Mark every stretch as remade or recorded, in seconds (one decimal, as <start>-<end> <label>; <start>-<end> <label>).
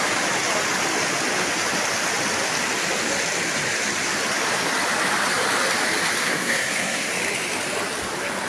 0.0-6.2 recorded; 6.2-7.1 remade; 7.1-8.5 recorded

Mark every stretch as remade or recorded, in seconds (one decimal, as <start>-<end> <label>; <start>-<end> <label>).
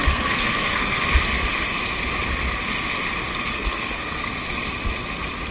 0.0-1.1 remade; 1.1-3.5 recorded; 3.5-4.3 remade; 4.3-5.5 recorded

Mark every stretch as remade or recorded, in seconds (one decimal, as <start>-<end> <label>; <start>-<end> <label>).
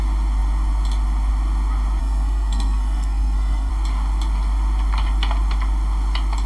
0.0-2.0 recorded; 2.0-3.7 remade; 3.7-6.5 recorded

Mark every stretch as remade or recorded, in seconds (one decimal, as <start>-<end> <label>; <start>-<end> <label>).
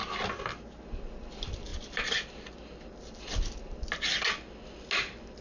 0.0-5.4 recorded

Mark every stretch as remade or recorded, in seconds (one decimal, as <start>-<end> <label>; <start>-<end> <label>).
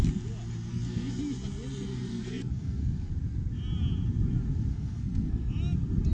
0.0-0.7 recorded; 0.7-1.2 remade; 1.2-2.1 recorded; 2.1-3.1 remade; 3.1-4.7 recorded; 4.7-5.5 remade; 5.5-6.1 recorded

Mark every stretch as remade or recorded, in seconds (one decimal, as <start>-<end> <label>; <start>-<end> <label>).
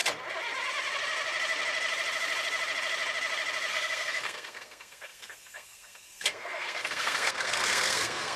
0.0-3.7 recorded; 3.7-8.4 remade